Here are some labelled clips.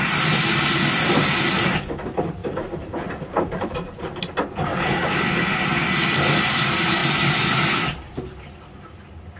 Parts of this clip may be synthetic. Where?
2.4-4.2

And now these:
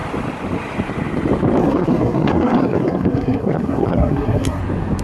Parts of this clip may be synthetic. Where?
1.6-4.6

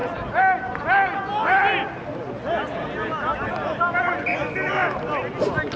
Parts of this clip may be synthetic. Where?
3.5-4.4

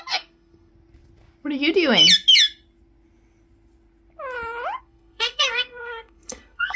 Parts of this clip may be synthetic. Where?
0.0-0.7; 4.8-6.8